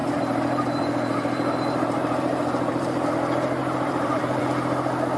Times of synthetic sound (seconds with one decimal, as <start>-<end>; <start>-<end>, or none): 0.0-3.1; 3.6-4.4